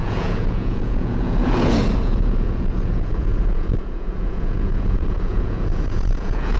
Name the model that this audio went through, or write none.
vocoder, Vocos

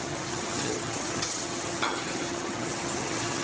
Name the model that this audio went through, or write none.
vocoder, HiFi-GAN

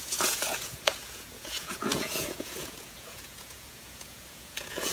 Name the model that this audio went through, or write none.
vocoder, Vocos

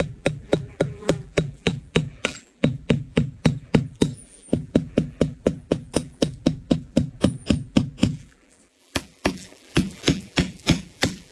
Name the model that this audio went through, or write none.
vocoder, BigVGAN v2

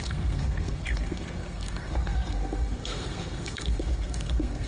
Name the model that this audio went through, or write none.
codec, SNAC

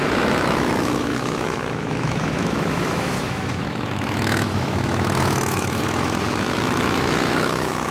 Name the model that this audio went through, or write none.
autoencoder, DAC-VAE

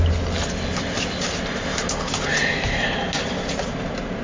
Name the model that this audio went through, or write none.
none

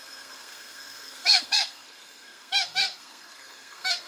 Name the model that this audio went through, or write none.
codec, SNAC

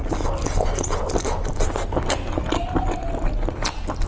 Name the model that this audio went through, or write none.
none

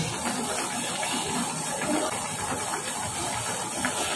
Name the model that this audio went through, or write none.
none